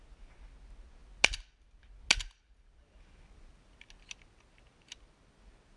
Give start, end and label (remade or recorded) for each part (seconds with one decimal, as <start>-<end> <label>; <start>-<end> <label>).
0.0-5.8 recorded